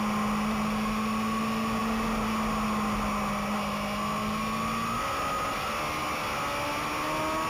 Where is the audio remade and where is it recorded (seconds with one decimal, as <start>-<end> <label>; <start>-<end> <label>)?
0.0-7.5 recorded